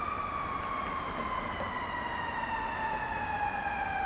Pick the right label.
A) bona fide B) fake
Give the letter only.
A